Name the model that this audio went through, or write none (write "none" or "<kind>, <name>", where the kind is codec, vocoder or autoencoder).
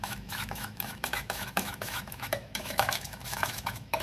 autoencoder, DAC-VAE